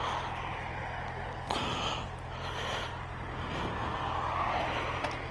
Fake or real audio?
real